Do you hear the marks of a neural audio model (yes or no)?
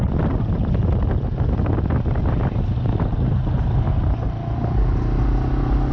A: no